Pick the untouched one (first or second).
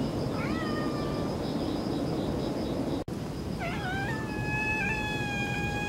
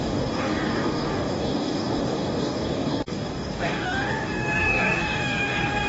first